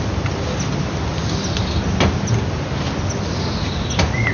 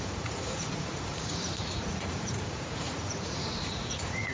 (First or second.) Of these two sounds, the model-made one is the second